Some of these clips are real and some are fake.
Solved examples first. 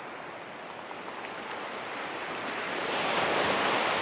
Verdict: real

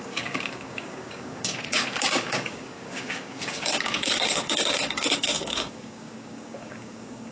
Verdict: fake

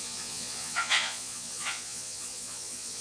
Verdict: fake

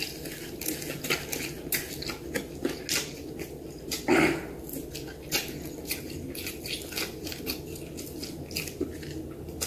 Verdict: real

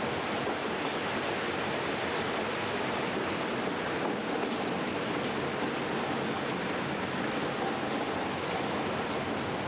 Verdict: real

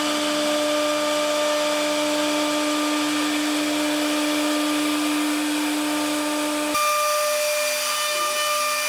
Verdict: real